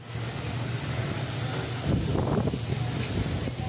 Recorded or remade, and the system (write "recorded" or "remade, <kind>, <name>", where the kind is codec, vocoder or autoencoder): recorded